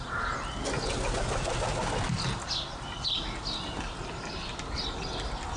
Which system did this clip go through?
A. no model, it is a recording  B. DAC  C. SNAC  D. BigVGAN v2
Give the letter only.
A